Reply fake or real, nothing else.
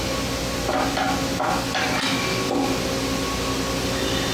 real